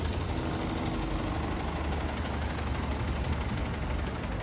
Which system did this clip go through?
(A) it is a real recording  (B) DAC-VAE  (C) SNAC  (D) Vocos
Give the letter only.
A